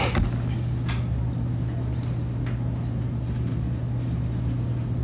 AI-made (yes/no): no